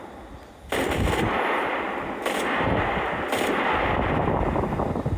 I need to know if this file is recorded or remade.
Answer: recorded